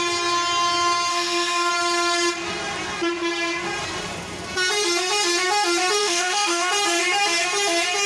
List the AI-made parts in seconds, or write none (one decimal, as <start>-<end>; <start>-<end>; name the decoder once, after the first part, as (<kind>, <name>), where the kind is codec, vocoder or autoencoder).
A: 1.1-1.7 (autoencoder, DAC-VAE); 6.0-6.7